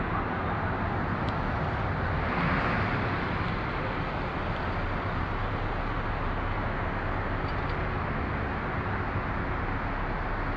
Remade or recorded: recorded